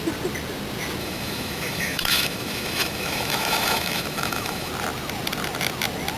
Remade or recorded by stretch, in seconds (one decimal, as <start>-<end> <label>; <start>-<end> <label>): 0.0-1.0 recorded; 1.0-4.7 remade; 4.7-6.2 recorded